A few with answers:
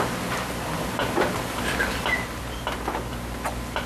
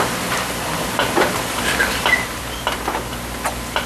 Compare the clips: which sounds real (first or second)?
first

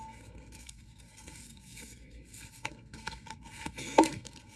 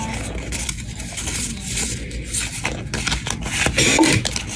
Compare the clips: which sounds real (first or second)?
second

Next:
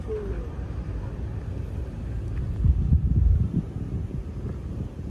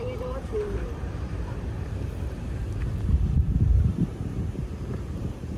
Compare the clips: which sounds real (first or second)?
first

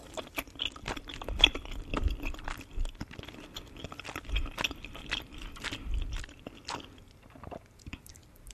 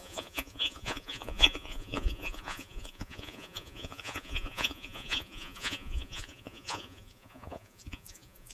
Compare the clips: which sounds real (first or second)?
first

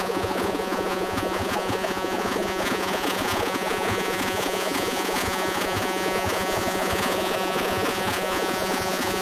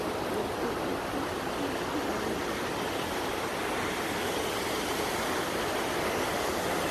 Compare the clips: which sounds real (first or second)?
second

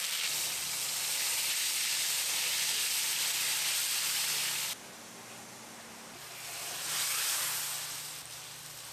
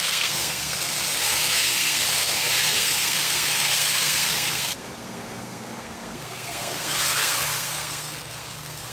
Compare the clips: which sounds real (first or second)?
first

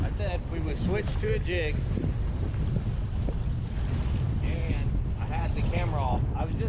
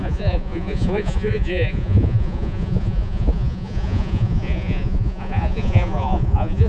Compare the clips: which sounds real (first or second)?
first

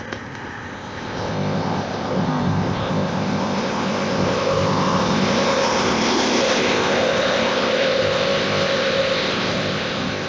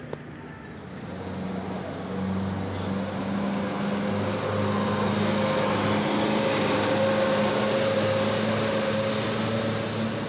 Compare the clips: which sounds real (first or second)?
second